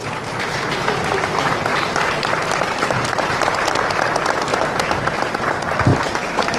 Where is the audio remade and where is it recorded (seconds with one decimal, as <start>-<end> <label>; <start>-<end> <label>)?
0.0-1.7 recorded; 1.7-3.8 remade; 3.8-4.5 recorded; 4.5-5.4 remade; 5.4-5.9 recorded; 5.9-6.6 remade